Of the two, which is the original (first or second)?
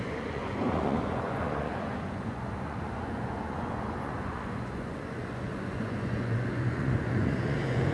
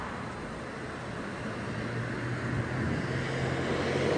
second